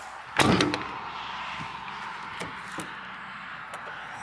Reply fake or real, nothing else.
real